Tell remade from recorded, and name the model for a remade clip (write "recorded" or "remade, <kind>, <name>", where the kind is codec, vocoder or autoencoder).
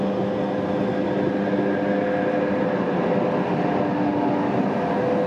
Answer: recorded